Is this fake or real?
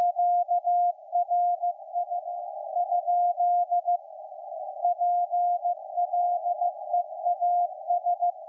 real